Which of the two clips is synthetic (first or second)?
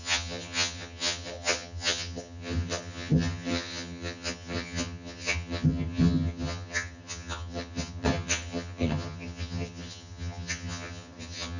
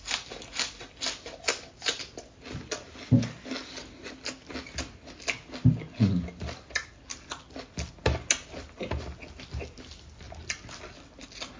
first